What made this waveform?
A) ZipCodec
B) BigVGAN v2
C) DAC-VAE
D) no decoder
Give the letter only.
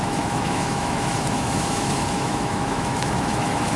C